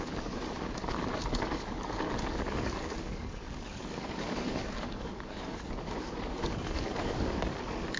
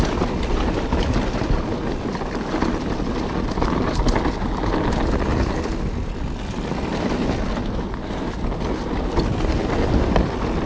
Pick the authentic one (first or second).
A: second